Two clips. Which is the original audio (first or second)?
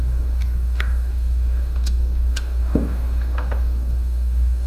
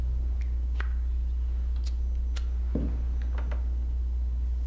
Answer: second